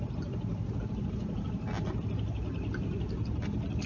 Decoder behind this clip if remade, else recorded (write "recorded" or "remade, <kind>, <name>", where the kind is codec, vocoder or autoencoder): recorded